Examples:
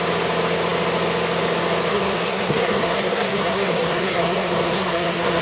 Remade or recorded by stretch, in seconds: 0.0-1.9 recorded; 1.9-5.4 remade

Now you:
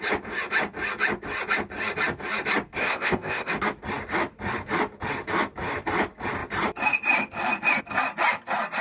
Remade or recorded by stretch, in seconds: 0.0-2.8 recorded; 2.8-3.5 remade; 3.5-8.8 recorded

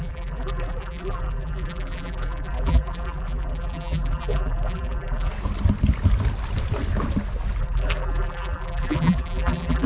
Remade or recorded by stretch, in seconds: 0.0-5.3 remade; 5.3-7.6 recorded; 7.6-9.9 remade

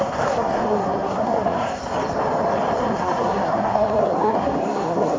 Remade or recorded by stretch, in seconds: 0.0-1.8 remade; 1.8-2.8 recorded; 2.8-5.2 remade

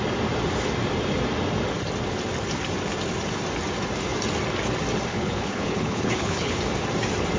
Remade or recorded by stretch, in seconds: 0.0-5.1 recorded; 5.1-6.6 remade; 6.6-7.4 recorded

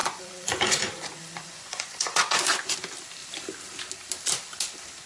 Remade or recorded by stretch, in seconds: 0.0-2.8 remade; 2.8-5.1 recorded